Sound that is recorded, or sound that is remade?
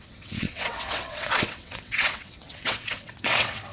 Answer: remade